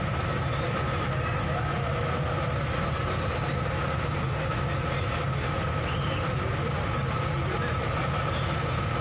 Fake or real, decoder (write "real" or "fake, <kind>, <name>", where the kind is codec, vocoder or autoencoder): real